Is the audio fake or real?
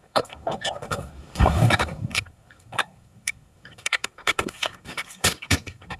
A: fake